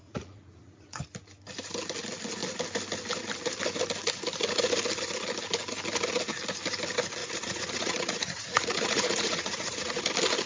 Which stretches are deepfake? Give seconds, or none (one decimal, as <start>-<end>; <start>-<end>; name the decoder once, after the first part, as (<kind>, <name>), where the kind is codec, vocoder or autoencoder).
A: 0.0-1.0 (vocoder, Vocos); 7.2-10.1